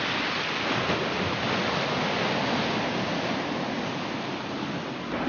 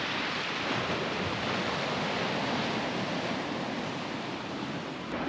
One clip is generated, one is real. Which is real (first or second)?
first